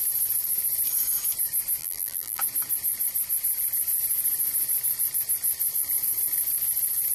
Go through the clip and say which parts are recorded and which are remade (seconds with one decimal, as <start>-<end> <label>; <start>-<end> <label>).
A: 0.0-1.8 recorded; 1.8-2.4 remade; 2.4-7.1 recorded